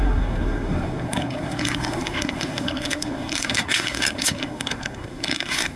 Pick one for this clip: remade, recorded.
remade